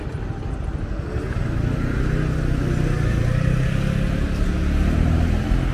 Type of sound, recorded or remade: recorded